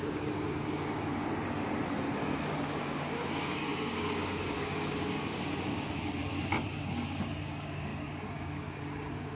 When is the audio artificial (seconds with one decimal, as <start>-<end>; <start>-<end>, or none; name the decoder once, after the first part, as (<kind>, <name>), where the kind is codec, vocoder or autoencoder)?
0.0-1.1 (codec, DAC); 2.5-6.2; 6.9-9.4